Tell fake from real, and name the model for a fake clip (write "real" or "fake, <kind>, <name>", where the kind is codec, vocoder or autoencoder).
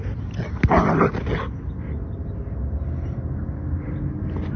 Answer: real